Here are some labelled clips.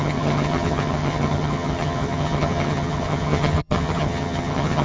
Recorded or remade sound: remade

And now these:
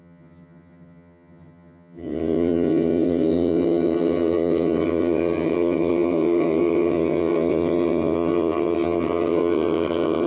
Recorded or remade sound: remade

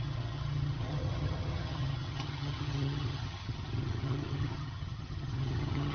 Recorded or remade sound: remade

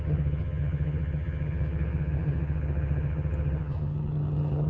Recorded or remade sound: remade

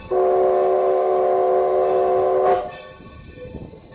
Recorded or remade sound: recorded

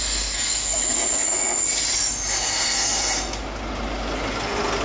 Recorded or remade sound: recorded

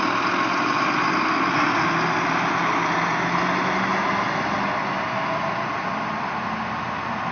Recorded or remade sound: recorded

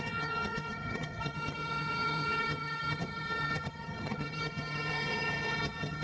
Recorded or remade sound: remade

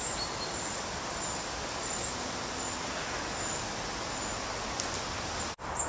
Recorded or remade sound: recorded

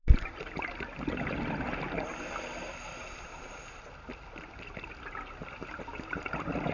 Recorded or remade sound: recorded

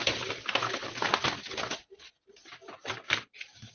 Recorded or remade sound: recorded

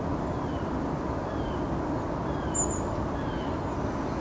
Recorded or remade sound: recorded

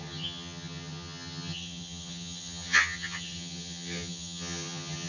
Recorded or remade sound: remade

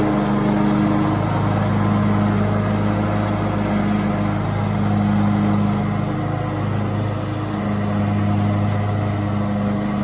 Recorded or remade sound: recorded